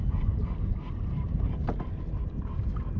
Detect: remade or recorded recorded